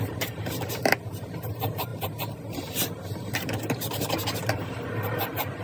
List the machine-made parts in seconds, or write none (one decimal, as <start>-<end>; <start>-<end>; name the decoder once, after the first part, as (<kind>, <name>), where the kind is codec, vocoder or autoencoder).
0.0-5.6 (vocoder, BigVGAN v2)